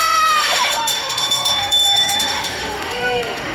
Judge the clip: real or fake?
fake